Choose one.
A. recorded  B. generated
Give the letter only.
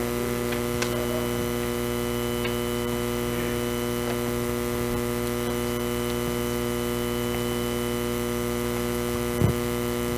A